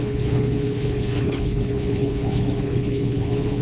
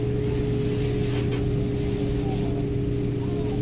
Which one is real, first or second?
second